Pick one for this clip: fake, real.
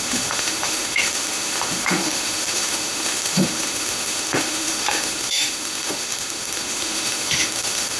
fake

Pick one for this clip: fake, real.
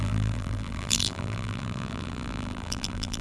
fake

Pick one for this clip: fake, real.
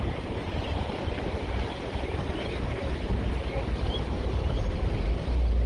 fake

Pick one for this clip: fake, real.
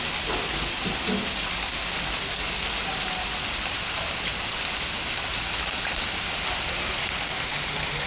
real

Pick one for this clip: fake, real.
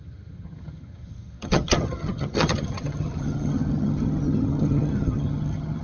fake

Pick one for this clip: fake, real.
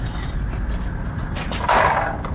real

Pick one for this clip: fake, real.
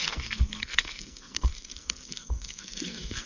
fake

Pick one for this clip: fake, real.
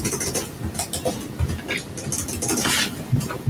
real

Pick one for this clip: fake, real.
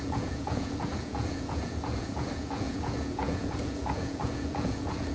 fake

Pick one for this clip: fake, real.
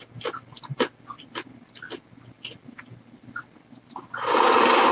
real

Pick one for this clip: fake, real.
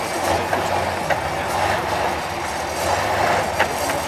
real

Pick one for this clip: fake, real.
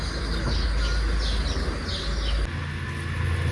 real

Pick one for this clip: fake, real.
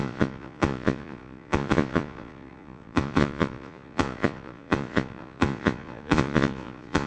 fake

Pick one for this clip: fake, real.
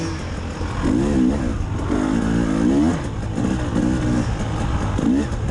real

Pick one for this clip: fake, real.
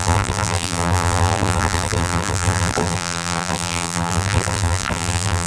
fake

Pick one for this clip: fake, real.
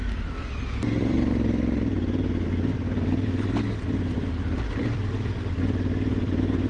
fake